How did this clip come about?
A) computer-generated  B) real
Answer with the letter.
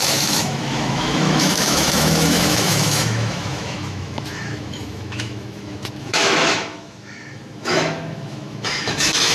A